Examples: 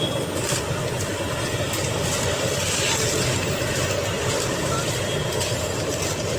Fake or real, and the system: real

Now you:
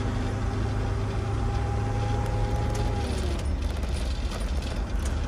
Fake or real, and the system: real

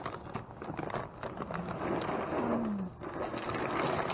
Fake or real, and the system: real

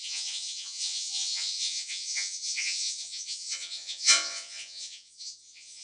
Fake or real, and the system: fake, vocoder, Vocos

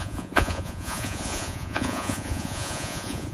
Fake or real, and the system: fake, vocoder, Vocos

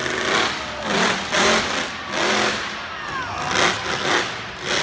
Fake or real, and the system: real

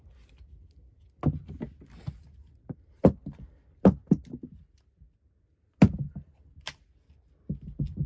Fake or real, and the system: real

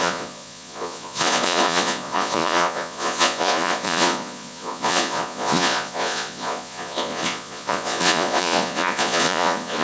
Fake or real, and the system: fake, vocoder, Vocos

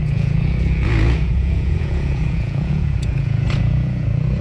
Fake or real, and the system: fake, vocoder, Vocos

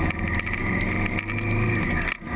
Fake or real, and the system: real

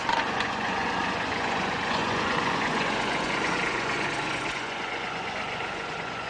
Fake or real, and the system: fake, vocoder, Vocos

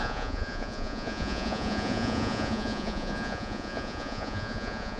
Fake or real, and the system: fake, vocoder, Vocos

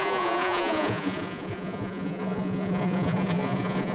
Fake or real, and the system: fake, vocoder, Vocos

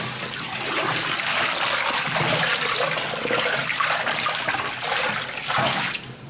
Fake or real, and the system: real